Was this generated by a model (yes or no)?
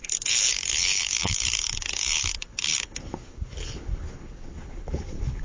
yes